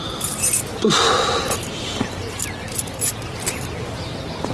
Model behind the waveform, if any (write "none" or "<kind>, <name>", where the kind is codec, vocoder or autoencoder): none